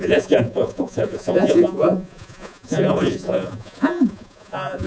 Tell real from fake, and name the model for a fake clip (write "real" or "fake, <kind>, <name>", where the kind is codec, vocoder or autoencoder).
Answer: fake, vocoder, Vocos